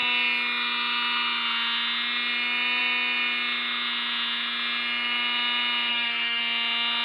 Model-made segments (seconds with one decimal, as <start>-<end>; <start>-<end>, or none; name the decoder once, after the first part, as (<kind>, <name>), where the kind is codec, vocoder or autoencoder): 5.9-6.4 (codec, SNAC)